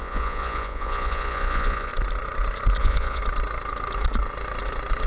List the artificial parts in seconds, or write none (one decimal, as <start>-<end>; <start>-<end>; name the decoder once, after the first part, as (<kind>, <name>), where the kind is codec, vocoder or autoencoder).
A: 0.0-1.9 (vocoder, Vocos); 2.8-3.2